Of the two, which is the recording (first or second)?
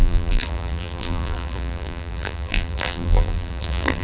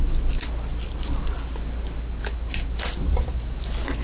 second